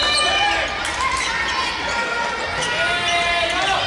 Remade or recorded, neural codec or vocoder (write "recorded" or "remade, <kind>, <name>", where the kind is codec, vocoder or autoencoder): recorded